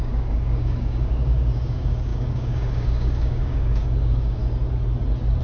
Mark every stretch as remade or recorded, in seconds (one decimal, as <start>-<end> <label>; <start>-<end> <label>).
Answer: 0.0-4.4 remade; 4.4-5.4 recorded